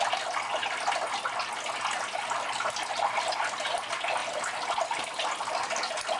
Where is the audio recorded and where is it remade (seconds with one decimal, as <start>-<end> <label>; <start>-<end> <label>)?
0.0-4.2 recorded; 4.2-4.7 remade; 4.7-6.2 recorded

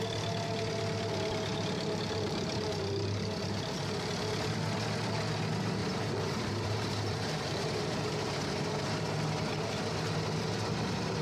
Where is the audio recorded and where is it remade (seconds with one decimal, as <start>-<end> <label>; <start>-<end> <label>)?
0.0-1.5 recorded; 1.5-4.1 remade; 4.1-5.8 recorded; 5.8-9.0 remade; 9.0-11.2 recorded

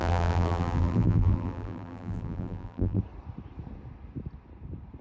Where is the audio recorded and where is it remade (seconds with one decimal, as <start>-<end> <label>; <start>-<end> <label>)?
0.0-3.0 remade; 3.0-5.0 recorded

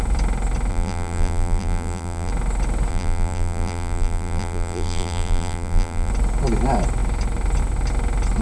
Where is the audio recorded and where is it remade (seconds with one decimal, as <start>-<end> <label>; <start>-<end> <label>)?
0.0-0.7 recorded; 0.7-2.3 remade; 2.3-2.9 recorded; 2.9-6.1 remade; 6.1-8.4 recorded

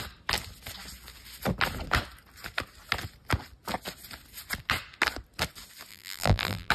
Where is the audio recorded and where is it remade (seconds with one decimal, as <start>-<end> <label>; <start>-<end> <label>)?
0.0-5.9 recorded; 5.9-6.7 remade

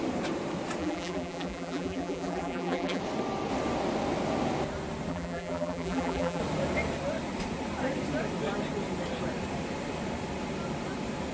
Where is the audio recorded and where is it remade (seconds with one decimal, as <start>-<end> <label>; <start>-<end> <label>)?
0.0-0.8 recorded; 0.8-3.0 remade; 3.0-5.1 recorded; 5.1-6.4 remade; 6.4-11.3 recorded

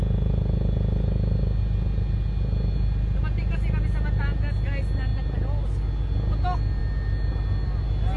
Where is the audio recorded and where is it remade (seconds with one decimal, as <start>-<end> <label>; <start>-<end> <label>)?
0.0-8.2 recorded

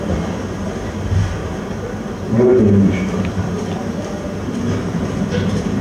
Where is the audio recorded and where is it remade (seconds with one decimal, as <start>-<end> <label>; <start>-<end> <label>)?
0.0-1.4 recorded; 1.4-4.0 remade; 4.0-4.8 recorded; 4.8-5.8 remade